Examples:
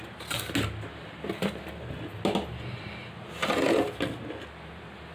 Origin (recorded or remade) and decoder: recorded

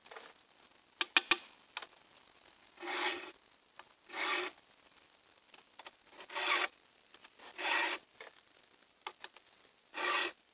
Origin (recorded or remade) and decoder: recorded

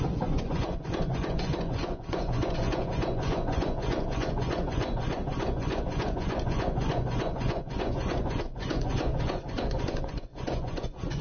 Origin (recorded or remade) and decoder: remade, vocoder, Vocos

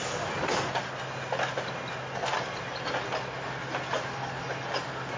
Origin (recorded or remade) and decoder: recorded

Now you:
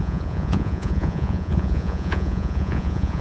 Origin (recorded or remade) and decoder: remade, vocoder, Vocos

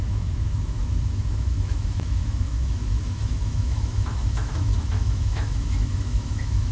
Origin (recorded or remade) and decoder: remade, autoencoder, DAC-VAE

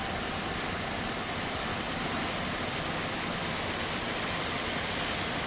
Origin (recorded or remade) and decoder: recorded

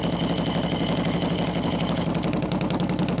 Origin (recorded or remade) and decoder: recorded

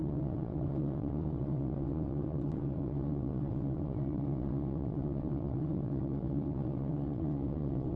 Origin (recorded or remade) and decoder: remade, vocoder, WaveNeXt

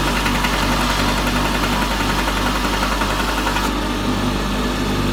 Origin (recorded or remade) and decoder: recorded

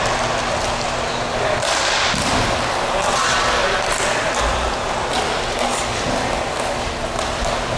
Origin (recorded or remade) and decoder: recorded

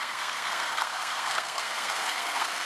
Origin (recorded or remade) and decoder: remade, codec, SNAC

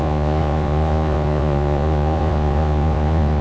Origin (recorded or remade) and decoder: remade, vocoder, Vocos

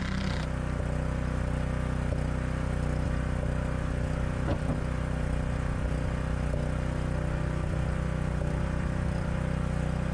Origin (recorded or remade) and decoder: recorded